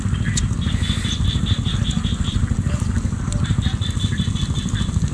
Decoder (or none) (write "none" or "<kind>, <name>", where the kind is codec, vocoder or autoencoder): none